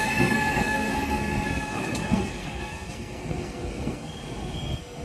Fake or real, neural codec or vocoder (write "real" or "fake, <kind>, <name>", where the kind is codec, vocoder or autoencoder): fake, codec, SNAC